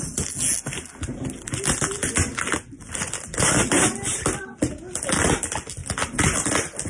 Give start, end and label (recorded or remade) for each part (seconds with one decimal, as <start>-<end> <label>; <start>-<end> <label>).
0.0-6.9 recorded